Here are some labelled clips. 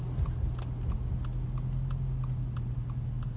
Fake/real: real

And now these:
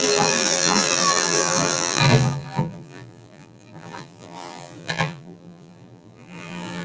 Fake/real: fake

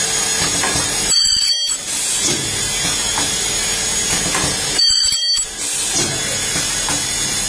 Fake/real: real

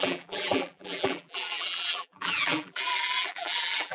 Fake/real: fake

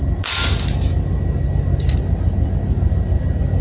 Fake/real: real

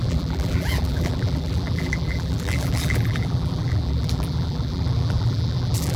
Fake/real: fake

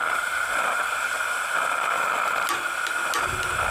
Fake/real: real